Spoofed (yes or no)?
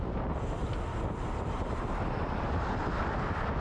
no